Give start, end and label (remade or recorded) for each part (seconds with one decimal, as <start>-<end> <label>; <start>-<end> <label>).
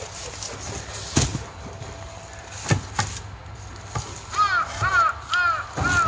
0.0-6.1 recorded